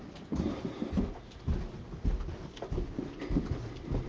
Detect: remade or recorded recorded